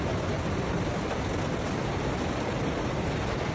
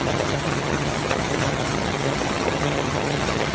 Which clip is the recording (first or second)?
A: first